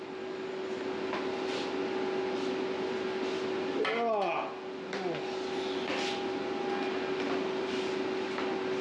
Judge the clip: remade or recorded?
recorded